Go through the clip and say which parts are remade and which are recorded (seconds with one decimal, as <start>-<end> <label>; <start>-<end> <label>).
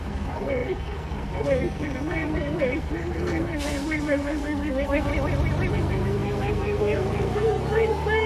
0.0-5.1 remade; 5.1-5.7 recorded; 5.7-8.3 remade